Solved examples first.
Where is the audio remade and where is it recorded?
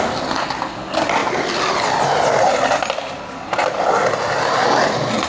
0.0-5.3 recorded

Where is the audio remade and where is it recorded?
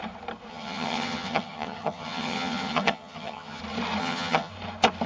0.0-0.5 recorded; 0.5-3.6 remade; 3.6-4.0 recorded; 4.0-4.5 remade; 4.5-5.1 recorded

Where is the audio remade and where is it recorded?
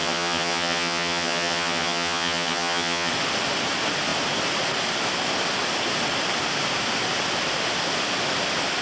0.0-3.1 remade; 3.1-8.8 recorded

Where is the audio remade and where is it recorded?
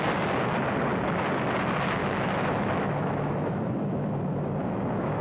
0.0-2.0 recorded; 2.0-5.2 remade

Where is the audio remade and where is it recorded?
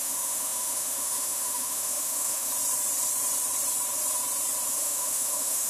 0.0-2.5 remade; 2.5-4.7 recorded; 4.7-5.7 remade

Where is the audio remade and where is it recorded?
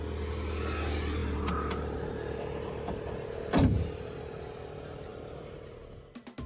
0.0-6.5 recorded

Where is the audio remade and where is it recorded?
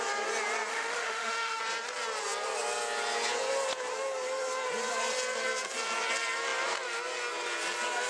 0.0-0.7 recorded; 0.7-1.6 remade; 1.6-8.1 recorded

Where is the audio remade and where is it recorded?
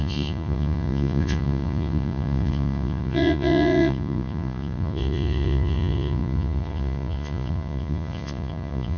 0.0-9.0 remade